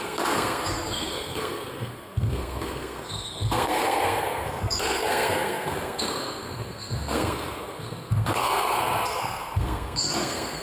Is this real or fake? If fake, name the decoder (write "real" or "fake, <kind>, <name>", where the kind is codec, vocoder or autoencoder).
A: fake, codec, SNAC